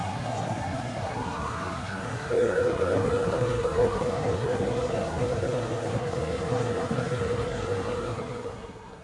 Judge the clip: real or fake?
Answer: fake